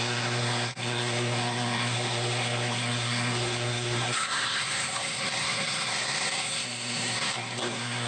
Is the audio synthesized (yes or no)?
yes